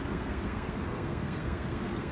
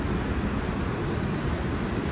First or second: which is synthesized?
first